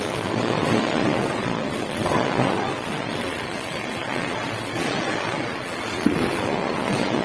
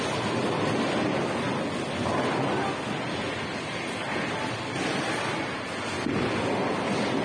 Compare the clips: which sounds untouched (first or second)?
second